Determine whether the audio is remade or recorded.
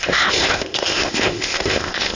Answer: remade